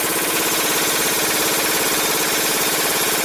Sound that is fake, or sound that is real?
fake